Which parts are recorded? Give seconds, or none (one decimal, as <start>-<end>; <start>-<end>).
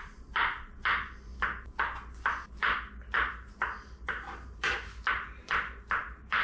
1.3-3.5